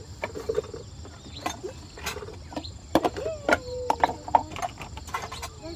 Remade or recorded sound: recorded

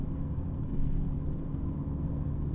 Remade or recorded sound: remade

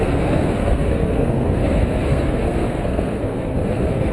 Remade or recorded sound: remade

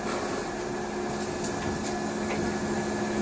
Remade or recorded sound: recorded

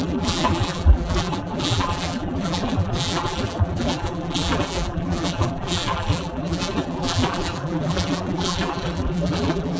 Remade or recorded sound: remade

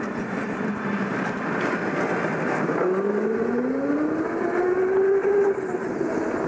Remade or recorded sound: recorded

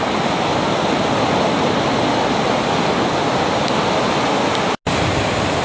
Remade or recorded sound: recorded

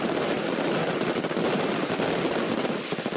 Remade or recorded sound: recorded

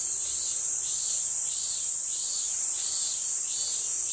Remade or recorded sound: remade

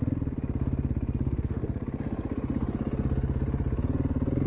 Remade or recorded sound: recorded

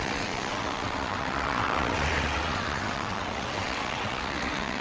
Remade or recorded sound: remade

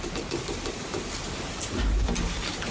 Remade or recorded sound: recorded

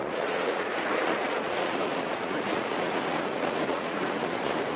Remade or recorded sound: remade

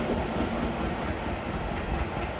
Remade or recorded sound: recorded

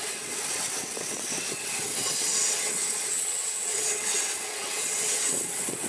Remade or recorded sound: remade